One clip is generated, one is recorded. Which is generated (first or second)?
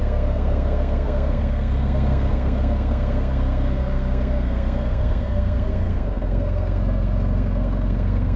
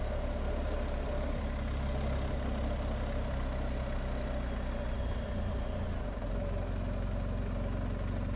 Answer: first